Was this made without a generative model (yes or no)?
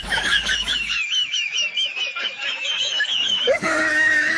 no